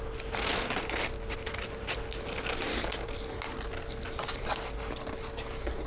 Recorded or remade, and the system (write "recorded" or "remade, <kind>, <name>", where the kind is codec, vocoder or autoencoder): recorded